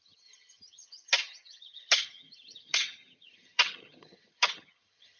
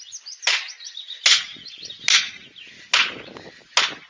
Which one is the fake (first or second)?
first